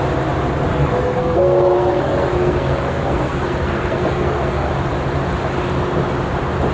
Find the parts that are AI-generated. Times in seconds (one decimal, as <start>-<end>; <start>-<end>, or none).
0.7-4.7